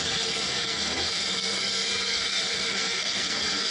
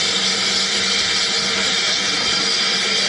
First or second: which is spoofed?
first